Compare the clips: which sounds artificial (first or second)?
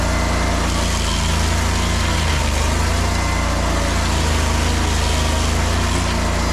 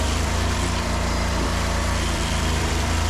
second